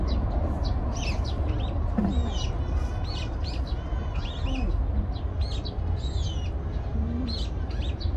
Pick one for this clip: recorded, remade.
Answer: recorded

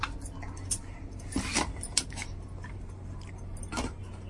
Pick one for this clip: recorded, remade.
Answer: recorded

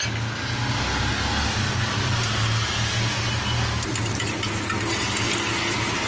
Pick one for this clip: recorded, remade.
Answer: recorded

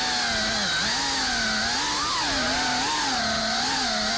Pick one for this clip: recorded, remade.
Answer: recorded